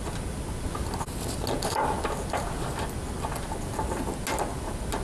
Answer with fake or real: real